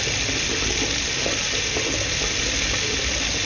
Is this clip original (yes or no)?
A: yes